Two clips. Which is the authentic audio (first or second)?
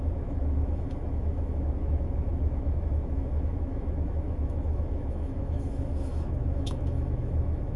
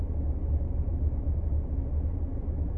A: second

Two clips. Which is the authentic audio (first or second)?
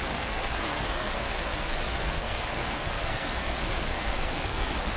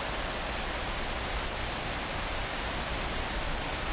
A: second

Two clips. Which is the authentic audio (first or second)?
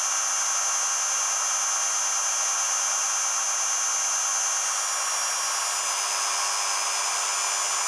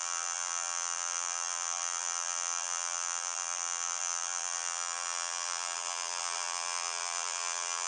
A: first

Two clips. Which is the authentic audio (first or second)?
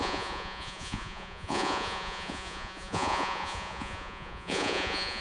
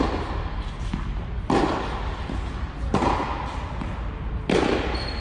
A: second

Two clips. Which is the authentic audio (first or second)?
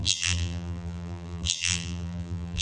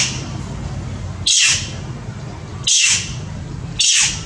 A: second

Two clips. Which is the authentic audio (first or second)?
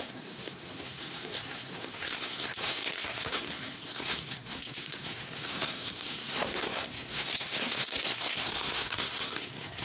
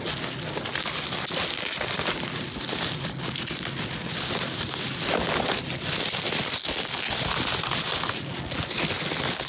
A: second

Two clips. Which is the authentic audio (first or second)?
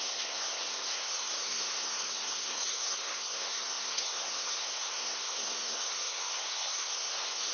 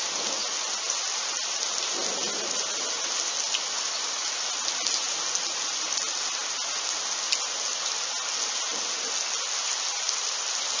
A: second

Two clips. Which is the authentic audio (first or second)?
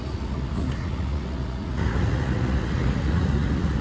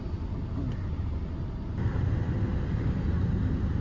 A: second